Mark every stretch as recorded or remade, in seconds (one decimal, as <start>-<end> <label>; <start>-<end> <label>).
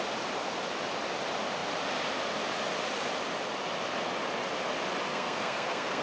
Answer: 0.0-5.1 recorded; 5.1-6.0 remade